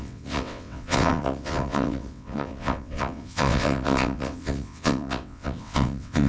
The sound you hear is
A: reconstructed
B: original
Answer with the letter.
A